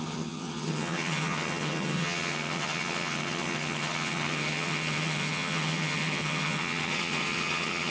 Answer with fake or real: fake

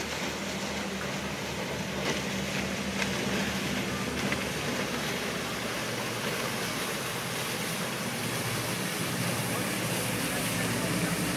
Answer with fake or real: real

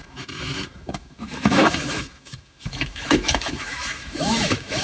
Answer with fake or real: fake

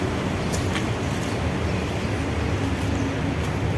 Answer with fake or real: real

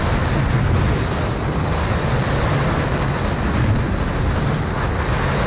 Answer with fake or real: real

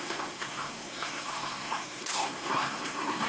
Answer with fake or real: fake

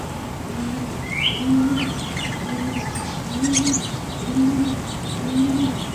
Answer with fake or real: real